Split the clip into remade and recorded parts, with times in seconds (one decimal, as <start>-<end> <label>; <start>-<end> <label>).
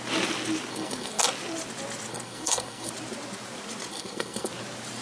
0.0-0.7 recorded; 0.7-1.2 remade; 1.2-2.1 recorded; 2.1-2.9 remade; 2.9-3.9 recorded; 3.9-4.5 remade; 4.5-5.0 recorded